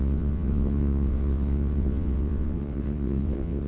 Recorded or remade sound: remade